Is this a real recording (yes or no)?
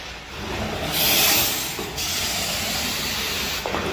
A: yes